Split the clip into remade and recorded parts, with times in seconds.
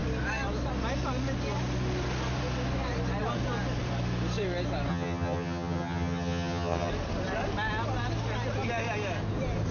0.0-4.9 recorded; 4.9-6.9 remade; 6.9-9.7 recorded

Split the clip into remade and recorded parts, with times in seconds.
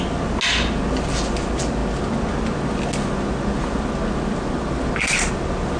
0.0-5.8 recorded